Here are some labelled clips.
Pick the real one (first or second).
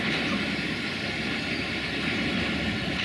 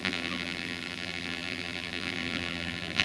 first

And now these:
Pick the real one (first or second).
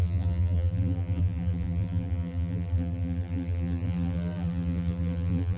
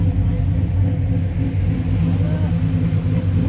second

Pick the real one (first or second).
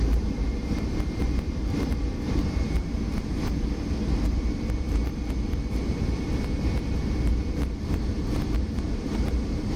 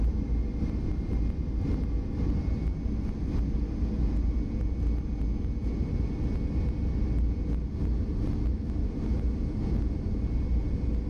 second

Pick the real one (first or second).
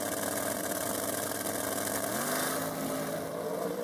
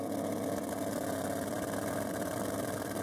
first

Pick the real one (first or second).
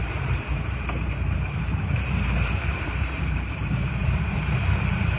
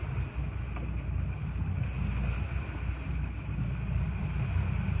second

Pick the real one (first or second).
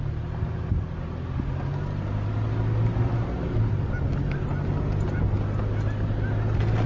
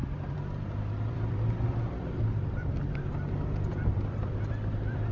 first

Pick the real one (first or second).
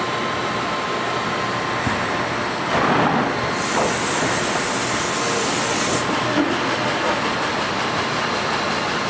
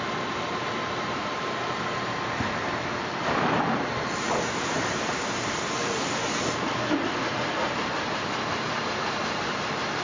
first